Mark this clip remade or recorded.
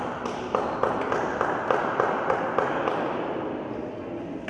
recorded